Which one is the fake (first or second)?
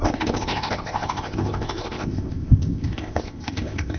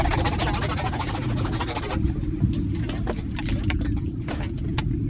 first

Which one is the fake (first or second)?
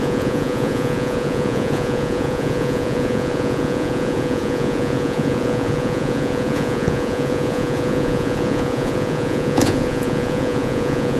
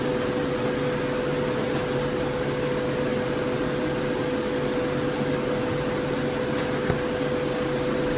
first